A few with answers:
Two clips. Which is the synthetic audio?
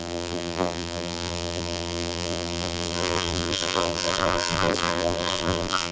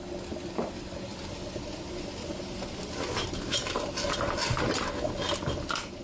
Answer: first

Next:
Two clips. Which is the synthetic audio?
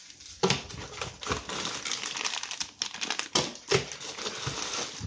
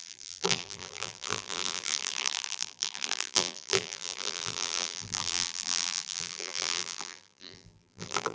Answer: second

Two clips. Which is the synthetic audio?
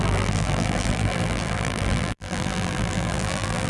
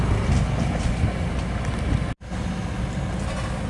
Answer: first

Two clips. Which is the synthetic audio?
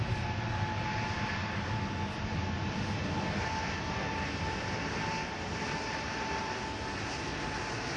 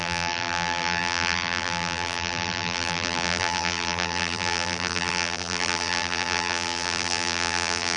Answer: second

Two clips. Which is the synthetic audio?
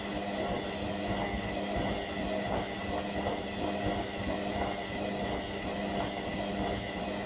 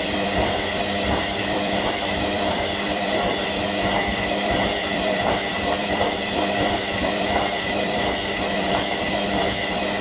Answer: second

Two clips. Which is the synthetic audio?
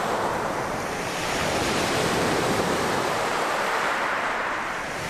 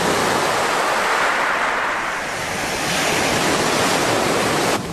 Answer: first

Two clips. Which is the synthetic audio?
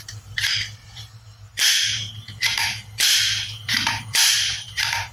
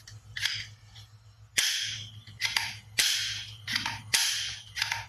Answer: first